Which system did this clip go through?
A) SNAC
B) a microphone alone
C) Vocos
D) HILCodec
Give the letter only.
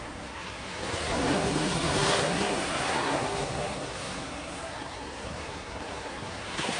A